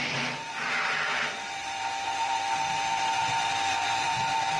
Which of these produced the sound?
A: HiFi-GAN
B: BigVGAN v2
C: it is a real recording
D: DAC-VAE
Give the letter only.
B